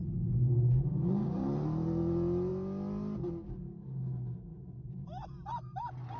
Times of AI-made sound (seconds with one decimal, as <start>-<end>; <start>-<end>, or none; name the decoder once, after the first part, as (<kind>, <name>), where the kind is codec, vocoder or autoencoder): 4.5-5.2 (vocoder, Vocos)